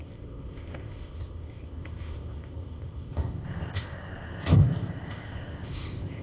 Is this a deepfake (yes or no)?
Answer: yes